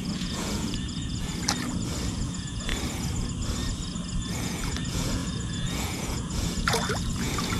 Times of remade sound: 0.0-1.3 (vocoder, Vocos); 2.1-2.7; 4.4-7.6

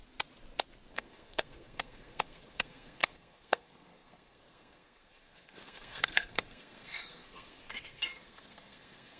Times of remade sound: 0.9-9.2 (codec, SNAC)

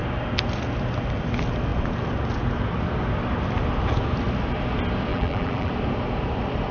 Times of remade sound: 5.1-5.7 (vocoder, BigVGAN v2)

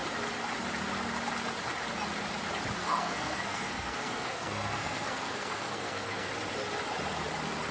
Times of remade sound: 2.8-6.3 (codec, SNAC)